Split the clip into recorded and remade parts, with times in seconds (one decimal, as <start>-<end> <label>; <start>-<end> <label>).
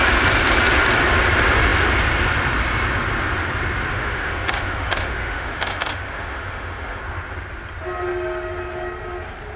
0.0-3.9 recorded; 3.9-7.0 remade; 7.0-9.6 recorded